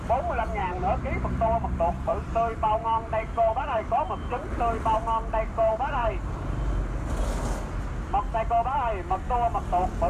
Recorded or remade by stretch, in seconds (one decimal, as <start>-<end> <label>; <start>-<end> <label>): 0.0-0.6 recorded; 0.6-4.1 remade; 4.1-6.0 recorded; 6.0-6.7 remade; 6.7-10.1 recorded